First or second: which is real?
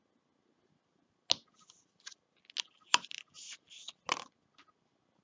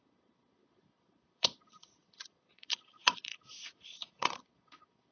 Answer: first